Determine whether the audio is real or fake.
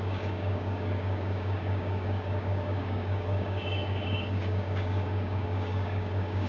fake